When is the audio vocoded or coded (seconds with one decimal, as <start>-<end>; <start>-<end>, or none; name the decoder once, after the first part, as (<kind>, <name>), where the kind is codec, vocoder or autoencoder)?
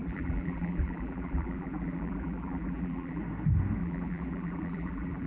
0.0-3.2 (vocoder, BigVGAN v2); 3.8-5.3